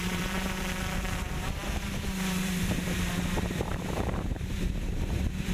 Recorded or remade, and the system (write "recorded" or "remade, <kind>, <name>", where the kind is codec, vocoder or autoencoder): remade, vocoder, BigVGAN v2